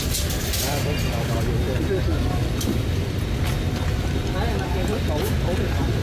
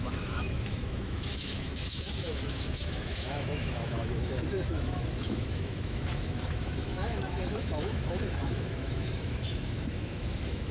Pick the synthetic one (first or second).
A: second